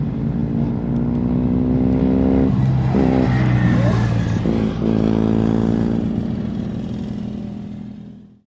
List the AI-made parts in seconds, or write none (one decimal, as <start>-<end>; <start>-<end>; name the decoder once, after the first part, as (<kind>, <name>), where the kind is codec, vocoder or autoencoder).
none